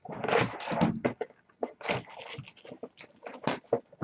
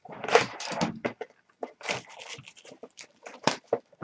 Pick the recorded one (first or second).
first